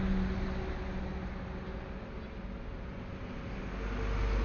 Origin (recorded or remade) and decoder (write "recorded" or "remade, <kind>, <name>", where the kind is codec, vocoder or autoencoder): recorded